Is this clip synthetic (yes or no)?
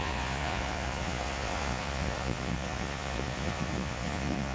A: yes